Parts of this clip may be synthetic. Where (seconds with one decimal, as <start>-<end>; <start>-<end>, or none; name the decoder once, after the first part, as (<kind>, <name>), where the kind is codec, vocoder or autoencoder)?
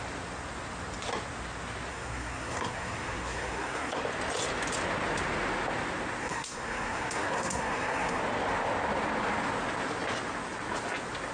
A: 1.9-4.0 (codec, SNAC); 6.2-8.2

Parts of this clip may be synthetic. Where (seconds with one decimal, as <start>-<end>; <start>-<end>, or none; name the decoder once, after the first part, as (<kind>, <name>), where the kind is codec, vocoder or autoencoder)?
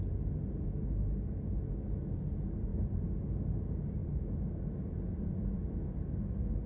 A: none